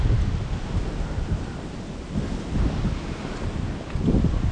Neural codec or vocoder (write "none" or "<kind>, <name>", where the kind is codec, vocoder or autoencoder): none